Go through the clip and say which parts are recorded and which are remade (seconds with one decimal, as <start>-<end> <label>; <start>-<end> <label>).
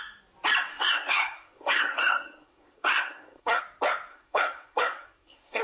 0.0-0.7 recorded; 0.7-3.6 remade; 3.6-4.1 recorded; 4.1-5.6 remade